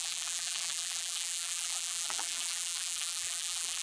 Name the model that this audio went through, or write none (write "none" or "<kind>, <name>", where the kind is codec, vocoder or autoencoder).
vocoder, BigVGAN v2